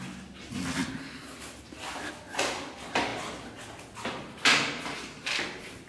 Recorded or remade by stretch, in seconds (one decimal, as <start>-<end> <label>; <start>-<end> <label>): 0.0-5.9 recorded

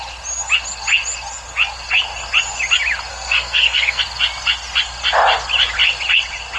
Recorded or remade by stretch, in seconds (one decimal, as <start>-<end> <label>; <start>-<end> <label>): 0.0-3.1 recorded; 3.1-4.0 remade; 4.0-6.6 recorded

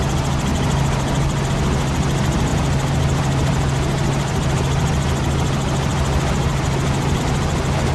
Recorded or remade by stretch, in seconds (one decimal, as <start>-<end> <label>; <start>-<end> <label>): 0.0-7.9 recorded

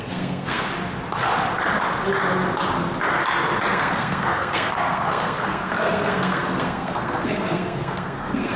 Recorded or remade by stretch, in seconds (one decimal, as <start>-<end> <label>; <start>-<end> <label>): 0.0-0.7 remade; 0.7-3.7 recorded; 3.7-8.6 remade

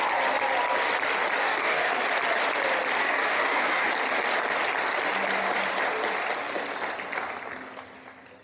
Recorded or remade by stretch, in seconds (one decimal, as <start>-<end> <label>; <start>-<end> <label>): 0.0-1.4 recorded; 1.4-2.0 remade; 2.0-3.0 recorded; 3.0-3.9 remade; 3.9-8.4 recorded

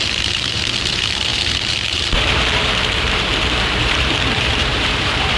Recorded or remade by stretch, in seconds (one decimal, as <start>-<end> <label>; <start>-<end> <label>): 0.0-5.4 remade

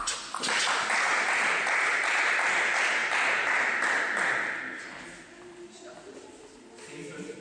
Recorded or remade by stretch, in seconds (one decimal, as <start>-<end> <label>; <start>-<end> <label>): 0.0-7.4 recorded

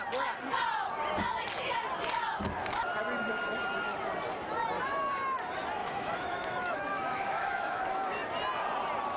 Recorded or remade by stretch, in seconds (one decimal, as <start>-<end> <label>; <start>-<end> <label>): 0.0-5.8 recorded; 5.8-8.1 remade; 8.1-9.2 recorded